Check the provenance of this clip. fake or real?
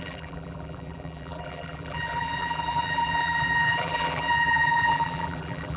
fake